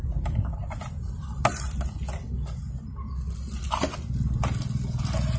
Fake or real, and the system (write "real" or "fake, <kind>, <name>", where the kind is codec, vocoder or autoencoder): real